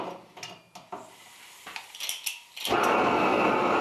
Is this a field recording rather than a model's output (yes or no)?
yes